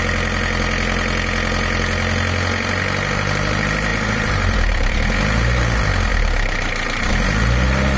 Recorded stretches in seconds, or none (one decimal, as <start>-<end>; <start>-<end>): 0.0-3.9; 4.9-8.0

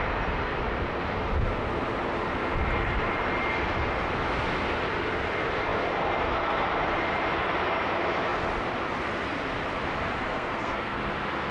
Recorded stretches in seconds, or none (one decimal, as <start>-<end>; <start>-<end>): 0.0-10.3; 11.0-11.5

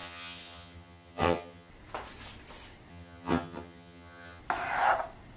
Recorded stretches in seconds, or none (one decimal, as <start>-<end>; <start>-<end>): 1.7-2.9; 4.4-5.4

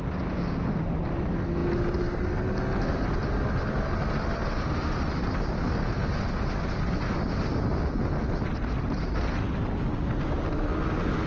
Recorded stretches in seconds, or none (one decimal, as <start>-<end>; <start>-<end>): 0.0-11.3

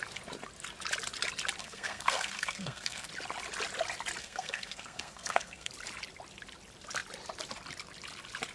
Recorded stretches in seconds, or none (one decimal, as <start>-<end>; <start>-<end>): 0.0-1.6; 3.1-4.2; 5.7-8.5